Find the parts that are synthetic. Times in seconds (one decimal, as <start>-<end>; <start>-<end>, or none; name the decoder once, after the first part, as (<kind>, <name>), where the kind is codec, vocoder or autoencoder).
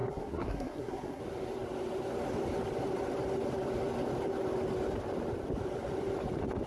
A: 0.0-1.2 (codec, SNAC)